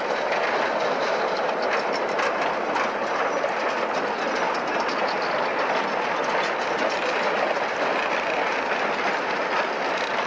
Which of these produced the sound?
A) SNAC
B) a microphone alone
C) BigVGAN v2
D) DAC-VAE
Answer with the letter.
B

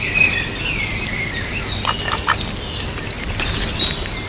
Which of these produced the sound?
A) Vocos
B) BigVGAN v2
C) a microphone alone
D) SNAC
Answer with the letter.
C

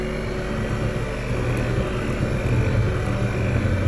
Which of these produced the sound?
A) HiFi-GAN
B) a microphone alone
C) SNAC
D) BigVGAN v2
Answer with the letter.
B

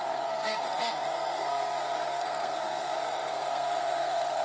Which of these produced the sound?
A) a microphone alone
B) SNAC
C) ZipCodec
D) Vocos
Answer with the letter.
B